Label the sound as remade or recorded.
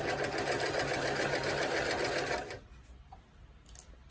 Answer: recorded